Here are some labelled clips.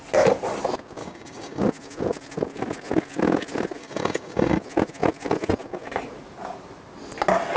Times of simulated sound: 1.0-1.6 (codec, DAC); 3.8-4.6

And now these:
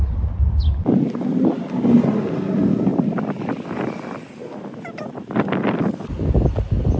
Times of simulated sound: none

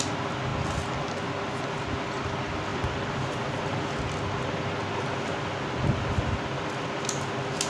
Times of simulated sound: none

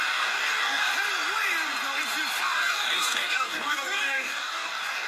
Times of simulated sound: 0.0-0.9 (codec, DAC); 2.4-5.1

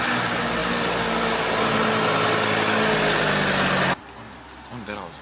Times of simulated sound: none

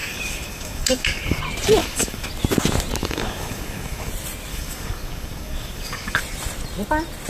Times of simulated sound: 0.0-1.4 (codec, DAC); 1.8-2.3; 3.0-4.1; 4.5-6.2

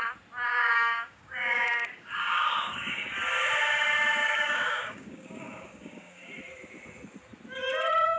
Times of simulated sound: 0.5-3.0 (codec, DAC); 4.2-6.3